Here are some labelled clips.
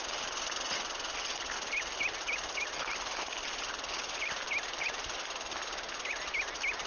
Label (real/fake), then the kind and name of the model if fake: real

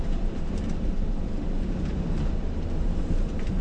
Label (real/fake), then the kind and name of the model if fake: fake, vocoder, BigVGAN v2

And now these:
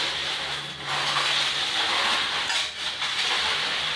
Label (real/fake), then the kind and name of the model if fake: real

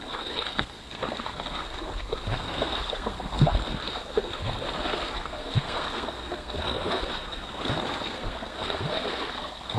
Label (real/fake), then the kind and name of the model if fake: fake, codec, SNAC